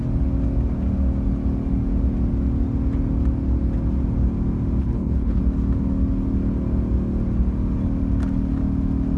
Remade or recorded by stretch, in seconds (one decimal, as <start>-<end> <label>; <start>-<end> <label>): 0.0-4.8 recorded; 4.8-5.4 remade; 5.4-9.2 recorded